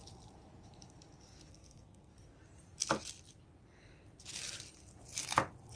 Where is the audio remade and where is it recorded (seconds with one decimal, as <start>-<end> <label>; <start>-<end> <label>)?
0.0-1.5 recorded; 1.5-2.1 remade; 2.1-5.8 recorded